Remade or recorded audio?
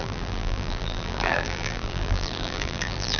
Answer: remade